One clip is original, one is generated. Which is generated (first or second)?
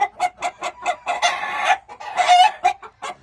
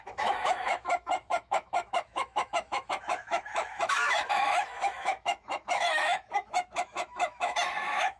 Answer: second